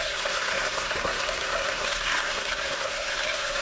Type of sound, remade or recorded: remade